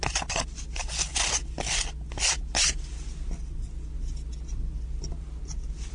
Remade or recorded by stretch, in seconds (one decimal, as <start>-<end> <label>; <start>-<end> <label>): 0.0-5.9 recorded